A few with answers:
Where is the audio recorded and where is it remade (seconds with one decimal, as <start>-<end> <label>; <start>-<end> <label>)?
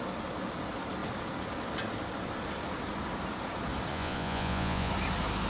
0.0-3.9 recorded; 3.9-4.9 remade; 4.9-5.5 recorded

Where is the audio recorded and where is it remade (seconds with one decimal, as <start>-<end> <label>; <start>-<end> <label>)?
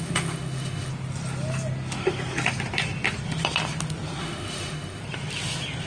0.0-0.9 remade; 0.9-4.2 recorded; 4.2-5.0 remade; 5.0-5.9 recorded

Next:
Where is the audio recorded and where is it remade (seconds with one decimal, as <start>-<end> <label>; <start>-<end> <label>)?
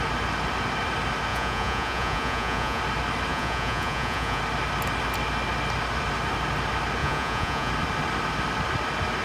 0.0-1.3 recorded; 1.3-2.8 remade; 2.8-3.3 recorded; 3.3-4.4 remade; 4.4-7.0 recorded; 7.0-7.7 remade; 7.7-9.2 recorded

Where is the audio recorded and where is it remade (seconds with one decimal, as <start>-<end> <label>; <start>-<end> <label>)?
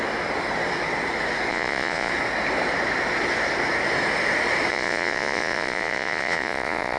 0.0-1.5 recorded; 1.5-2.1 remade; 2.1-4.7 recorded; 4.7-7.0 remade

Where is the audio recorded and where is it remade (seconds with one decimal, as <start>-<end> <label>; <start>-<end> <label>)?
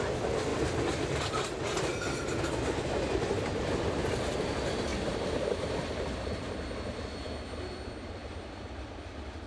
0.0-4.9 recorded; 4.9-6.3 remade; 6.3-9.5 recorded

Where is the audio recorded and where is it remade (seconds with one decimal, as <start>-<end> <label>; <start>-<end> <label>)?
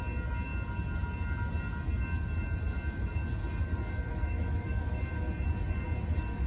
0.0-4.1 recorded; 4.1-5.0 remade; 5.0-6.5 recorded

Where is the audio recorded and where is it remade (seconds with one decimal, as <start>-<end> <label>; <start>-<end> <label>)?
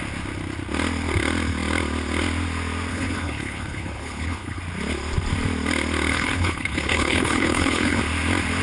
0.0-2.9 recorded; 2.9-4.6 remade; 4.6-6.1 recorded; 6.1-8.0 remade; 8.0-8.6 recorded